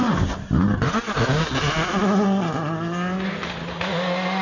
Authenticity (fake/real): real